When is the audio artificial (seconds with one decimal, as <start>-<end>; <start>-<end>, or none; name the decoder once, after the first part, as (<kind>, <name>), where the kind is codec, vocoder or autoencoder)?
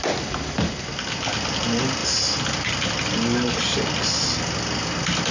none